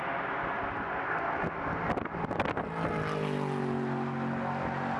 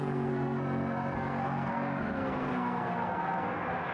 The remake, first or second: second